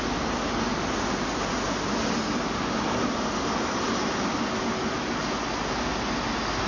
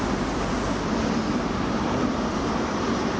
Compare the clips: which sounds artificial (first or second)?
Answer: second